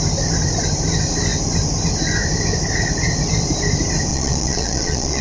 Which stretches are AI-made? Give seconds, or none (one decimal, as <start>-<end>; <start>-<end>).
4.1-5.2